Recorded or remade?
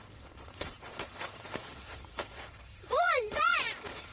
remade